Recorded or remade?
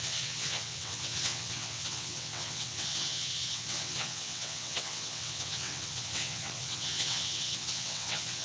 remade